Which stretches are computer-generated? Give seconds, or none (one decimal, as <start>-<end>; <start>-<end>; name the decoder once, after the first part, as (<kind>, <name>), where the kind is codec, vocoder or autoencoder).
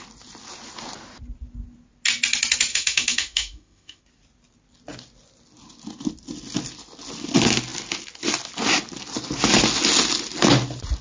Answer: 2.7-4.0 (autoencoder, DAC-VAE)